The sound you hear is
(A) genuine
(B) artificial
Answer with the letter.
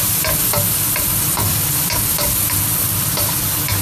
A